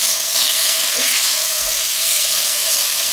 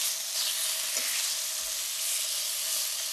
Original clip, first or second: second